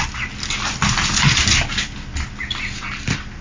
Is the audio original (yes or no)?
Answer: yes